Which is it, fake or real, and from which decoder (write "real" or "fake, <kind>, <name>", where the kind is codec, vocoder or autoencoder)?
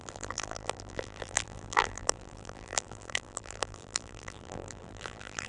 fake, vocoder, BigVGAN v2